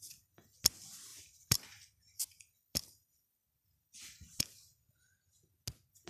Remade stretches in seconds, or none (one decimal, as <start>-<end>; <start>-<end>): 1.1-4.4